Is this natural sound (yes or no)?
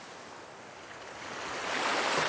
yes